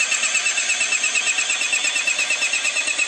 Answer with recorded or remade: recorded